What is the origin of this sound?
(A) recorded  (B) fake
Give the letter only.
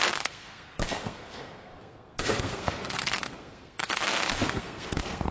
B